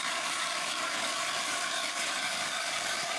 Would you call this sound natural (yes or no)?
no